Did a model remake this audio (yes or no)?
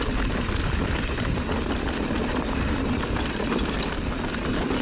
no